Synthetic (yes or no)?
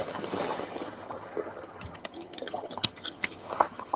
yes